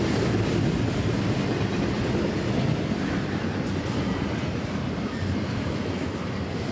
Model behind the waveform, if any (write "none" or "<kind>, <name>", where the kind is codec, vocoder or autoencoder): none